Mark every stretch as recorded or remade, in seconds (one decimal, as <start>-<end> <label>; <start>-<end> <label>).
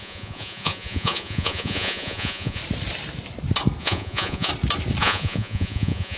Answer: 0.0-2.6 remade; 2.6-3.8 recorded; 3.8-4.5 remade; 4.5-5.0 recorded; 5.0-6.2 remade